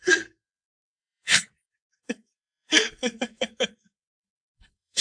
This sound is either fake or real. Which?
fake